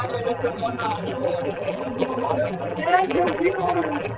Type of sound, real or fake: fake